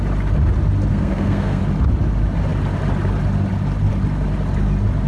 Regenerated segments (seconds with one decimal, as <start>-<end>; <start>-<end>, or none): 0.9-1.6